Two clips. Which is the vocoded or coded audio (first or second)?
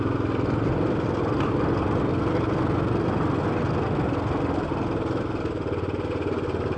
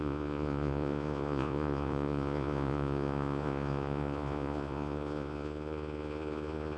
second